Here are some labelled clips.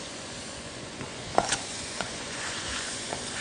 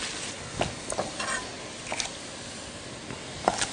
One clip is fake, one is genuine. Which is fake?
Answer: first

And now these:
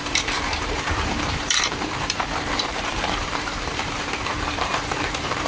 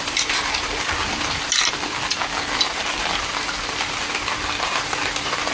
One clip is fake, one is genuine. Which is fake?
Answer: first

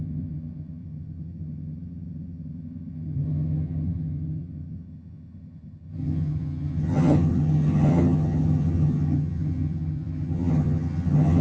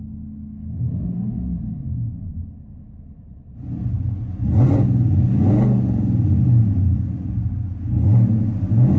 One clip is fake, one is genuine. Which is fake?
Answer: first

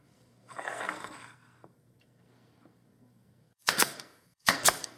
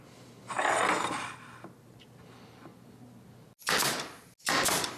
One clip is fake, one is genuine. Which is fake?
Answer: first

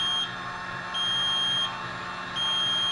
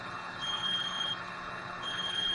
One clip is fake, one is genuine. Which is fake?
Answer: second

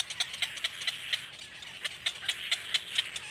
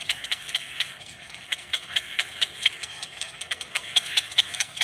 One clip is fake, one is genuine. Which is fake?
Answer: second